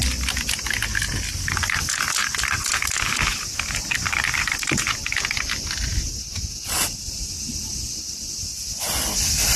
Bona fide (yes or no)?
yes